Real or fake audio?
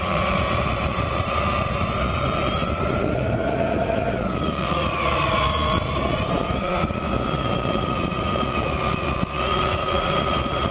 fake